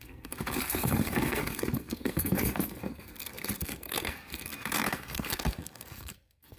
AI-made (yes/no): yes